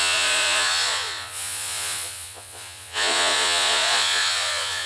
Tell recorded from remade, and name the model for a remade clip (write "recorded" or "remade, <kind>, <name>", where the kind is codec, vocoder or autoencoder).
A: remade, vocoder, Vocos